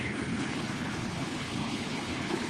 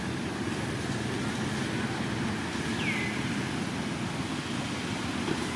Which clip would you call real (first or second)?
second